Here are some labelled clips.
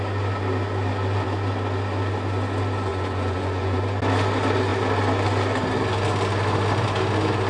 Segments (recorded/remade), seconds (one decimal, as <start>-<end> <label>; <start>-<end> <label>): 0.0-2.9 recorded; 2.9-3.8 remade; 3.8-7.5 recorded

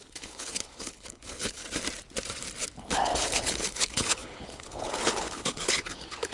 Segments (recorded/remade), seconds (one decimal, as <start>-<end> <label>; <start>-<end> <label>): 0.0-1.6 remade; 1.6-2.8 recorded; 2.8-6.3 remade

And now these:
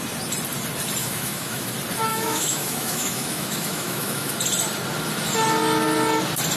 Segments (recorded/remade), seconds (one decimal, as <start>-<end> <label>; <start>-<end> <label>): 0.0-1.0 recorded; 1.0-1.7 remade; 1.7-2.1 recorded; 2.1-4.3 remade; 4.3-6.6 recorded

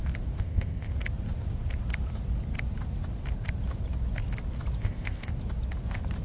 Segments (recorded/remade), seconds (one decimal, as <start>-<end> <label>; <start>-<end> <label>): 0.0-0.4 recorded; 0.4-0.9 remade; 0.9-4.8 recorded; 4.8-5.3 remade; 5.3-6.2 recorded

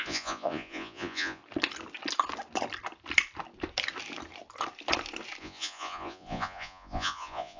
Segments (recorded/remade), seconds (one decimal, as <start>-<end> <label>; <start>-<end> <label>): 0.0-1.4 remade; 1.4-5.4 recorded; 5.4-7.6 remade

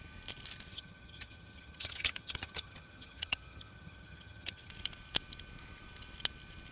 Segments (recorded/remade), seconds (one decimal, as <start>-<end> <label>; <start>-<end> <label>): 0.0-0.7 recorded; 0.7-4.7 remade; 4.7-6.7 recorded